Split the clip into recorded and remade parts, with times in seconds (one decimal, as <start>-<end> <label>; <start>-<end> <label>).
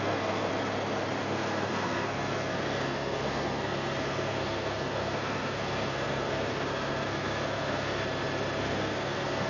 0.0-0.5 remade; 0.5-1.2 recorded; 1.2-8.0 remade; 8.0-8.6 recorded; 8.6-9.5 remade